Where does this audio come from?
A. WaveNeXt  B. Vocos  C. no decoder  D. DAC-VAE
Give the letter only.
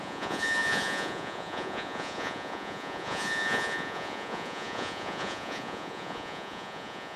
B